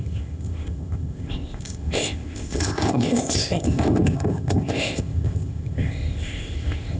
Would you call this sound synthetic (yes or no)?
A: yes